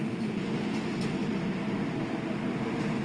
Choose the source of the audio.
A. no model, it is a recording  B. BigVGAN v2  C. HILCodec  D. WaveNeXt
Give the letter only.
A